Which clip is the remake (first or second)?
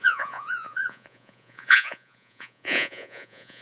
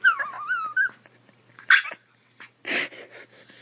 first